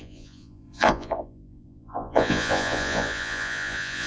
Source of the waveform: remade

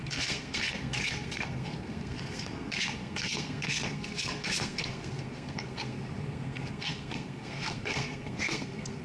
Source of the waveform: remade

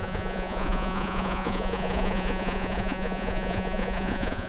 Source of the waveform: remade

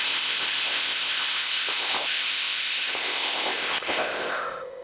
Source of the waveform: remade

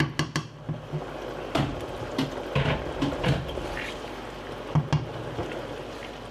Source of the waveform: recorded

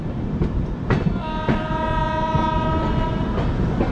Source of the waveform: recorded